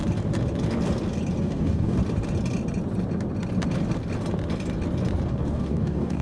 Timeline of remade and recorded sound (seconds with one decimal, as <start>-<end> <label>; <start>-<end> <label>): 0.0-1.4 recorded; 1.4-2.0 remade; 2.0-5.3 recorded; 5.3-6.2 remade